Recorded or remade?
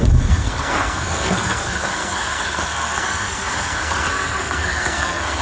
remade